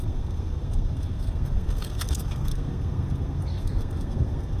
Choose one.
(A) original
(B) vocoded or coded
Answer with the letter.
B